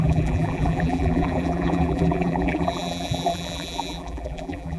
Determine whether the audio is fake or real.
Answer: fake